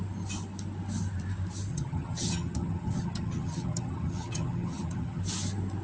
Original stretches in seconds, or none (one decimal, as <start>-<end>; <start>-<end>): 0.0-1.7; 5.2-5.8